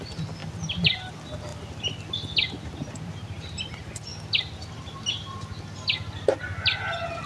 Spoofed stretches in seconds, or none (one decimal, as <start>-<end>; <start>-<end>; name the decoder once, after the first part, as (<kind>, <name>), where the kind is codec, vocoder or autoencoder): none

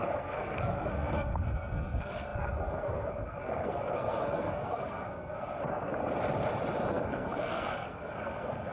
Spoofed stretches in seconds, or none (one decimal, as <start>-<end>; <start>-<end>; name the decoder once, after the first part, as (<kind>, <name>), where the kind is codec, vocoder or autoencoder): 0.0-5.9 (codec, SNAC); 6.9-8.7